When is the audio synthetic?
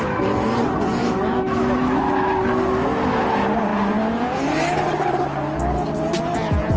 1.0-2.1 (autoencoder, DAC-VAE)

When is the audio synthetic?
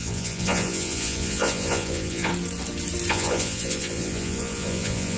0.0-2.3 (vocoder, Vocos); 3.1-5.2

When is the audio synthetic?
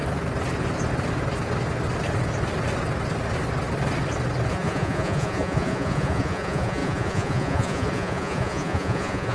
4.5-9.3 (vocoder, Vocos)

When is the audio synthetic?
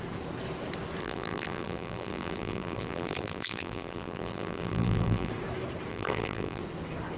1.0-5.3 (vocoder, BigVGAN v2); 5.9-6.6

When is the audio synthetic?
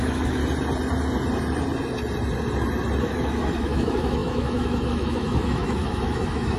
0.0-0.4 (autoencoder, DAC-VAE); 3.0-6.6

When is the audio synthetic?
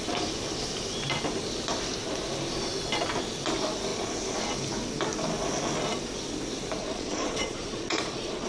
6.8-8.5 (vocoder, Vocos)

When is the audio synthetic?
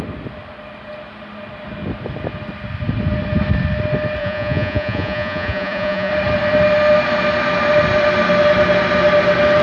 4.2-6.1 (vocoder, Vocos)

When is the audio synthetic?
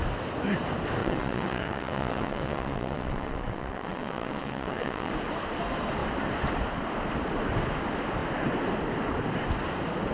1.0-5.1 (vocoder, WaveNeXt)